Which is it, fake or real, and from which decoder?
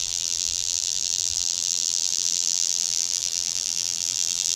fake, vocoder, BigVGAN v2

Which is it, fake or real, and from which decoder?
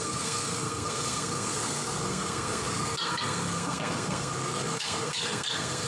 fake, codec, SNAC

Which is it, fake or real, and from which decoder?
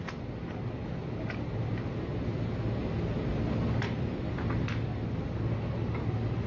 real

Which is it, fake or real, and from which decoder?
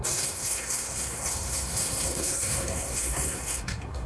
fake, codec, SNAC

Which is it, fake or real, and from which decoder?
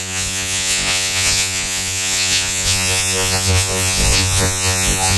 fake, vocoder, Vocos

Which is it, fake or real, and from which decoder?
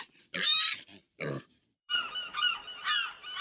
fake, vocoder, BigVGAN v2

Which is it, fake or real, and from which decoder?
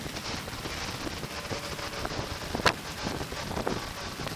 fake, vocoder, BigVGAN v2